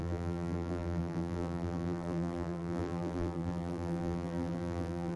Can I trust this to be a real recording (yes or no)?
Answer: no